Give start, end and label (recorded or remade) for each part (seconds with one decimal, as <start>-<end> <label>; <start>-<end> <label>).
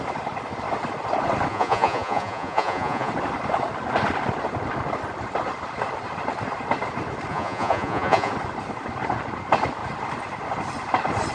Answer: 0.0-1.5 recorded; 1.5-3.1 remade; 3.1-7.3 recorded; 7.3-8.3 remade; 8.3-11.3 recorded